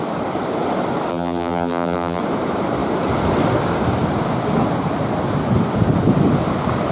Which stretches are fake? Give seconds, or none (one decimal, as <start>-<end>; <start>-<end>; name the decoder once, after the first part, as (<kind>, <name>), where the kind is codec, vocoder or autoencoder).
1.1-2.2 (vocoder, BigVGAN v2)